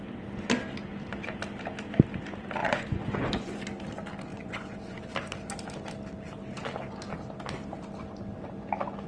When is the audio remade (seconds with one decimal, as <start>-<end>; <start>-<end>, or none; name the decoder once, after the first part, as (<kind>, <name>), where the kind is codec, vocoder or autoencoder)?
2.6-3.6 (vocoder, Vocos); 4.3-5.0